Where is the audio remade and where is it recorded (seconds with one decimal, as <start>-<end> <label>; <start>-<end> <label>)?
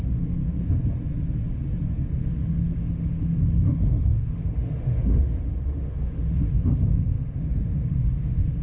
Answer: 0.0-0.4 remade; 0.4-2.1 recorded; 2.1-8.6 remade